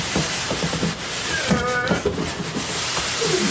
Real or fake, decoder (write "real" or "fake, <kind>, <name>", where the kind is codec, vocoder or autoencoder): fake, vocoder, BigVGAN v2